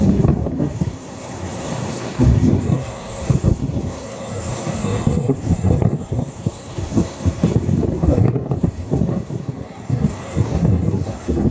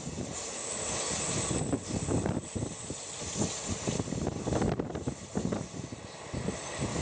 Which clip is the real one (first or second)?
second